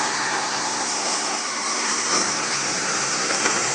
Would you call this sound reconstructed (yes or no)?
yes